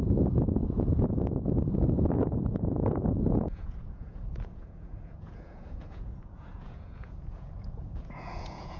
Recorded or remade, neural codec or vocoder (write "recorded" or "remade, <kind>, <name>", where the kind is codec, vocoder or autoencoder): remade, vocoder, Vocos